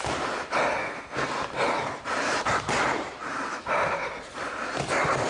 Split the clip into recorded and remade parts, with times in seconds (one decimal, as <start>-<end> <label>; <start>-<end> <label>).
0.0-0.8 recorded; 0.8-1.3 remade; 1.3-5.3 recorded